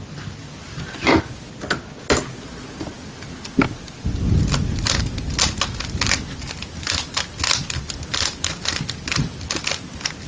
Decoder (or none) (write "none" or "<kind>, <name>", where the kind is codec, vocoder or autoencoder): none